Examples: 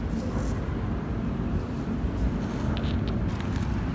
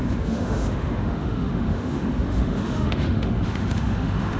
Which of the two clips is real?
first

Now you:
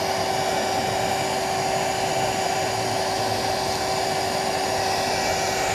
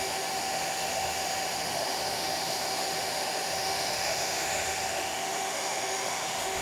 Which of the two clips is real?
first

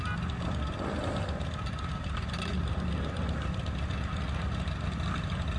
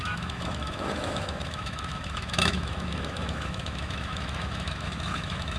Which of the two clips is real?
first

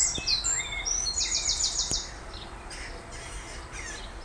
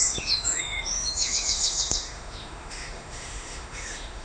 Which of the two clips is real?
first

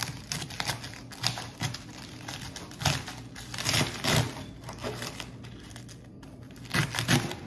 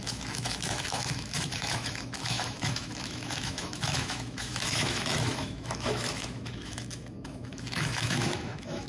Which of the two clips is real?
first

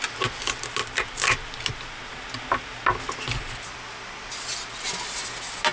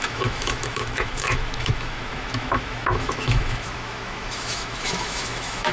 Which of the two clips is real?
first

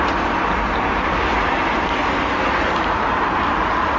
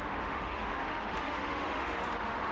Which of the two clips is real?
first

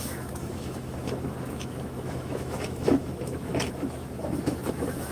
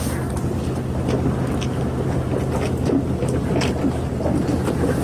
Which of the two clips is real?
second